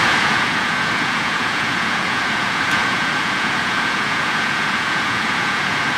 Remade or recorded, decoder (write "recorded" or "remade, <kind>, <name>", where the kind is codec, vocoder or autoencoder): remade, vocoder, Vocos